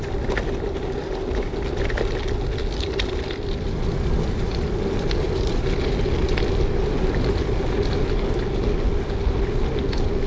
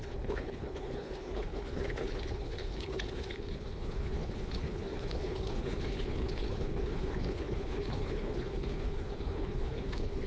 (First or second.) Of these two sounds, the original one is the first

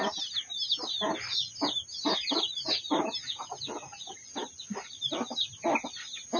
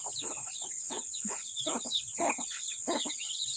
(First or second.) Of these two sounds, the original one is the first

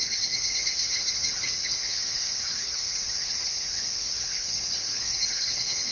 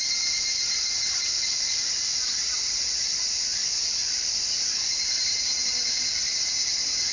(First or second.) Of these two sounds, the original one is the second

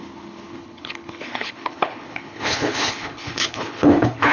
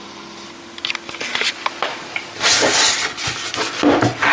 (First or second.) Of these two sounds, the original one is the second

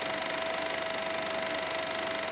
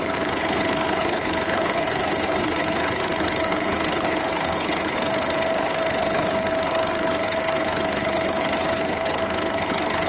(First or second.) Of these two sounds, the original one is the first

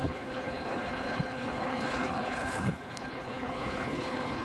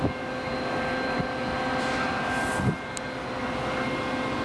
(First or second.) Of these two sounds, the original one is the second